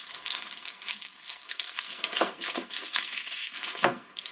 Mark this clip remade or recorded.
remade